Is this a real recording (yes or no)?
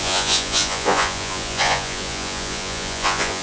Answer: no